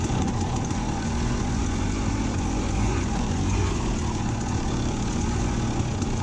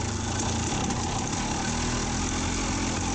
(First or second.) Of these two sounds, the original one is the second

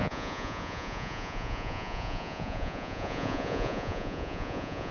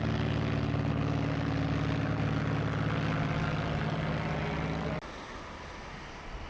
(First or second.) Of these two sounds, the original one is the second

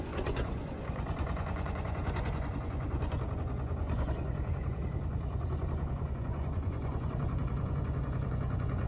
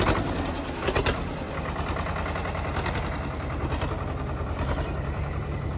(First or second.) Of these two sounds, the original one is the second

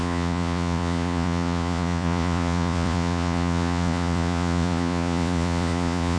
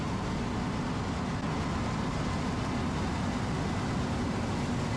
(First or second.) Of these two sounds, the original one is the second